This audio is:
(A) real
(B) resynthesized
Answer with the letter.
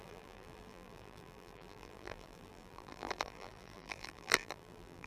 B